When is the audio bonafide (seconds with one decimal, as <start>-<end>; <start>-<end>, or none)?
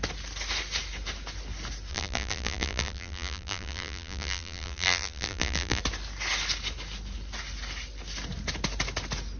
0.0-1.9; 5.8-9.4